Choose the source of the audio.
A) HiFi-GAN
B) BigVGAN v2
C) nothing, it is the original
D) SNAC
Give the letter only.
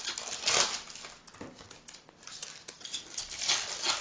C